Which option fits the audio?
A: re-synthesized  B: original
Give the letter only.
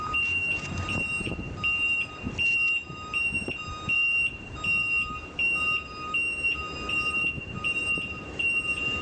A